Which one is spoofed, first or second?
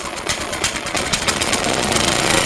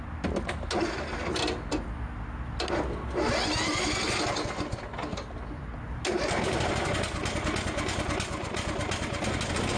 first